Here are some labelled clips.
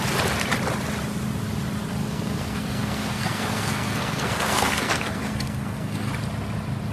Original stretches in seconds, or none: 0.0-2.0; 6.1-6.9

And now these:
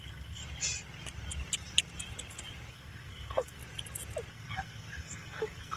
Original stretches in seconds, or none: 0.4-2.7; 3.6-4.3

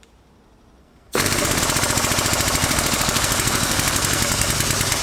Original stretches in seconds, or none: 0.0-0.8; 1.6-2.6; 4.5-5.0

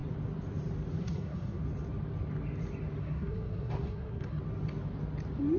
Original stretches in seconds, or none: 0.0-1.0; 1.6-3.0; 4.4-5.6

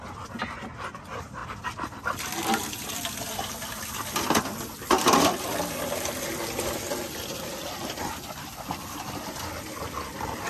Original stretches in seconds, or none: 0.0-10.5

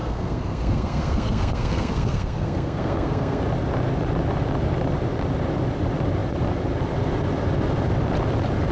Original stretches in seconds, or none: 3.4-8.7

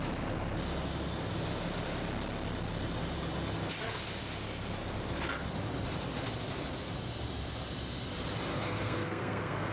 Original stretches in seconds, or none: 0.0-8.5

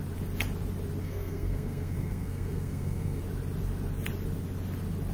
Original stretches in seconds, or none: 0.0-1.0; 3.2-5.1